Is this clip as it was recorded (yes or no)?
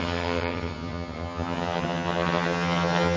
no